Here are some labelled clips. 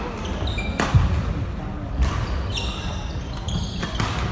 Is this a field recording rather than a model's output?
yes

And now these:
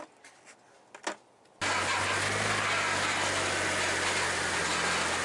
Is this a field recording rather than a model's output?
yes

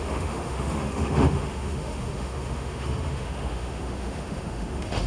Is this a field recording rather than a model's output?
no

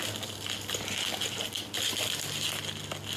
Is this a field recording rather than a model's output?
yes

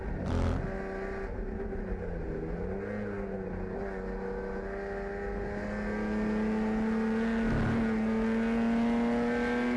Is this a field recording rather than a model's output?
yes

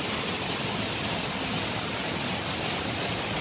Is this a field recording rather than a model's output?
yes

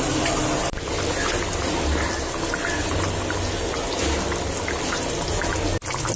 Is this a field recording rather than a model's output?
yes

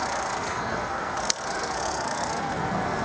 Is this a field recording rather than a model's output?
no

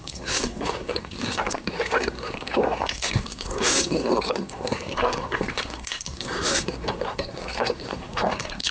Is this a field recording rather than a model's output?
no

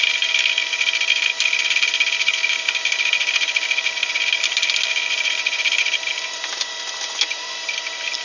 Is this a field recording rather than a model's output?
yes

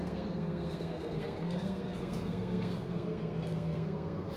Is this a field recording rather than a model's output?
no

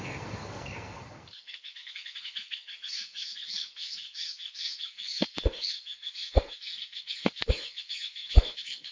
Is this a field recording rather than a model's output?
no